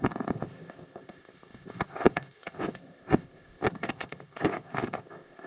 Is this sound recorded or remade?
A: remade